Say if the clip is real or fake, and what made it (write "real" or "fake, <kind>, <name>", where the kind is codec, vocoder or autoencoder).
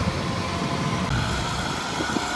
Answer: real